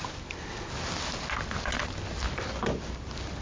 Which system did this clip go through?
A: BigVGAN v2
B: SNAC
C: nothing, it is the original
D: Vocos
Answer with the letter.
C